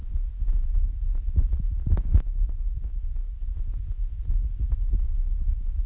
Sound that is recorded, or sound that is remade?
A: recorded